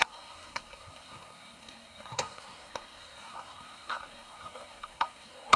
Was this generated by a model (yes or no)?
yes